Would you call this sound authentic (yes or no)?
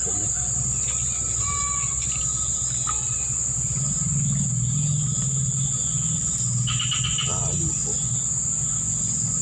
yes